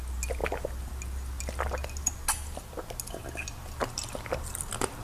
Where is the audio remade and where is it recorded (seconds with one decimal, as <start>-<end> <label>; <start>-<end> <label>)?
0.0-0.4 recorded; 0.4-0.9 remade; 0.9-3.8 recorded; 3.8-5.0 remade